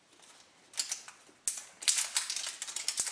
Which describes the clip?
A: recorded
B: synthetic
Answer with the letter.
A